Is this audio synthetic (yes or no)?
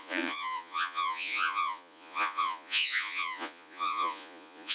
yes